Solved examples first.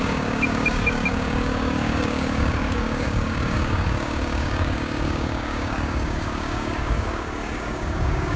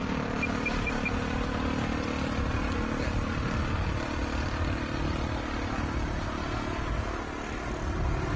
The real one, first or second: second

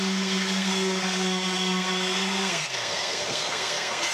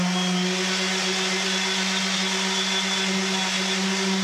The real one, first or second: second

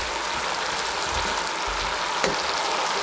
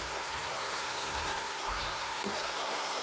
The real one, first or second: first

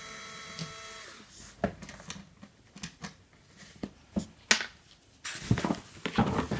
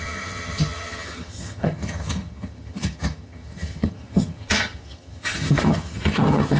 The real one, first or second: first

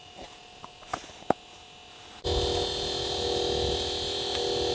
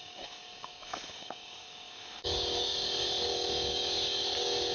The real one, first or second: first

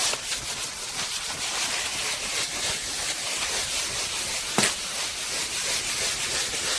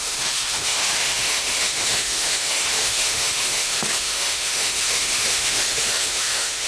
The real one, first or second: first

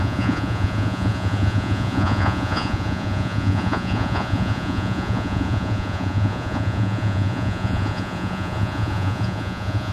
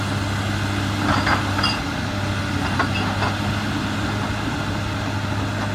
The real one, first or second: second